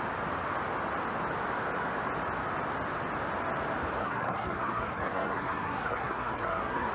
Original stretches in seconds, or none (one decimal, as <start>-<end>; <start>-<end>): 0.0-4.0